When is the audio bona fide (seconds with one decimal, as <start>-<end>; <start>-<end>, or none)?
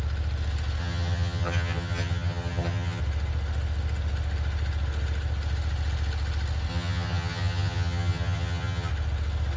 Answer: 0.0-0.8; 3.0-6.7; 8.9-9.6